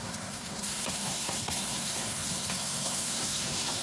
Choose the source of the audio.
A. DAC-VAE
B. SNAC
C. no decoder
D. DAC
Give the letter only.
B